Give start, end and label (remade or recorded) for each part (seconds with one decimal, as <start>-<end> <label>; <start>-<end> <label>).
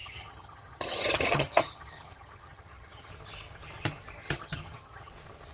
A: 0.0-3.1 remade; 3.1-4.2 recorded; 4.2-5.1 remade; 5.1-5.5 recorded